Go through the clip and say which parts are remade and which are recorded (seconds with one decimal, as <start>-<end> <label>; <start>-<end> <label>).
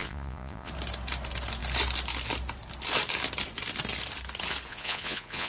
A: 0.0-0.7 remade; 0.7-4.7 recorded; 4.7-5.5 remade